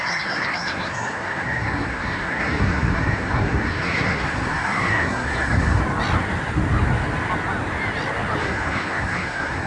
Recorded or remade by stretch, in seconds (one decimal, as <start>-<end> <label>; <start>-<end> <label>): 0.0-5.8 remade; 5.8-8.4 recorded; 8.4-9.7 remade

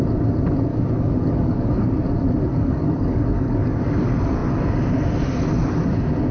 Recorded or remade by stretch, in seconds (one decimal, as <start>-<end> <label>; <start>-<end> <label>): 0.0-0.7 recorded; 0.7-1.8 remade; 1.8-2.5 recorded; 2.5-3.8 remade; 3.8-6.3 recorded

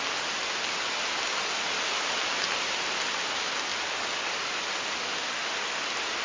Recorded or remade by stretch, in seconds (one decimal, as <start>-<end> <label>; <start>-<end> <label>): 0.0-6.2 recorded

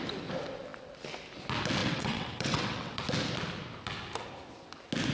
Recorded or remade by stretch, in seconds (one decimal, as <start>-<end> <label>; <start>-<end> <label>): 0.0-1.8 recorded; 1.8-3.0 remade; 3.0-5.1 recorded